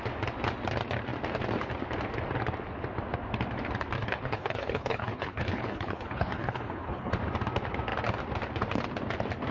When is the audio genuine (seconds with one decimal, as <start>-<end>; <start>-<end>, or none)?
0.0-4.0; 7.1-9.5